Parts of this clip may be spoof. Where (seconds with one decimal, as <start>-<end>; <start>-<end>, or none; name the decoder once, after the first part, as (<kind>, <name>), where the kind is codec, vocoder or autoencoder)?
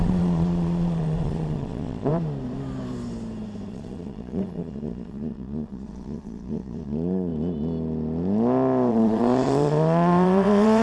0.0-2.1 (vocoder, Vocos); 3.7-7.3; 8.9-10.8